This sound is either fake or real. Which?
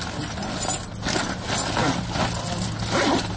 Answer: real